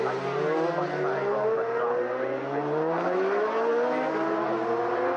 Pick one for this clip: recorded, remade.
recorded